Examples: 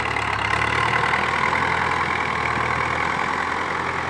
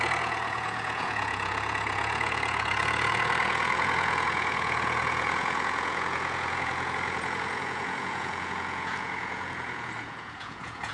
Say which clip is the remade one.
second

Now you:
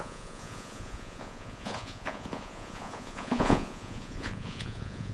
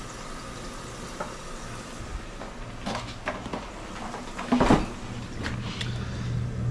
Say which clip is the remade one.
first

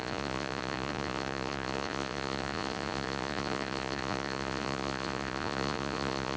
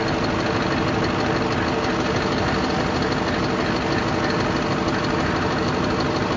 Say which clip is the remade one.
first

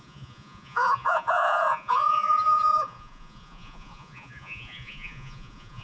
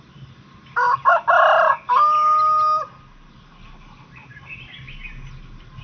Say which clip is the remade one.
first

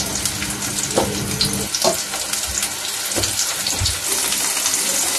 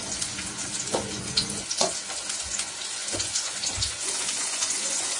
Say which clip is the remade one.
second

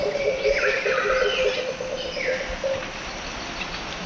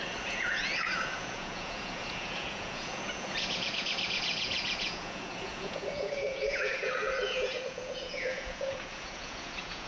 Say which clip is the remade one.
second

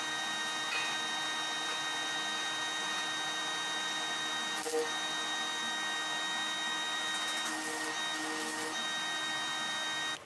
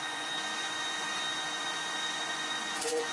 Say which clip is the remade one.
second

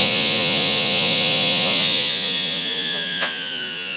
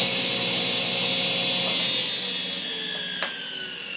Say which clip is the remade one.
first